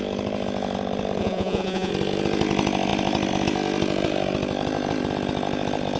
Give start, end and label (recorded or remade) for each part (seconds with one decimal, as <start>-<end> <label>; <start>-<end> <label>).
0.0-1.2 recorded; 1.2-1.9 remade; 1.9-6.0 recorded